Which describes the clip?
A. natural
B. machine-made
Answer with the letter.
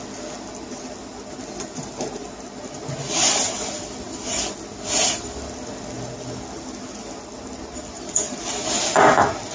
B